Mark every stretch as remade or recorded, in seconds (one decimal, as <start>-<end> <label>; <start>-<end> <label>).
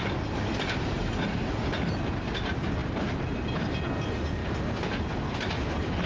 0.0-6.1 recorded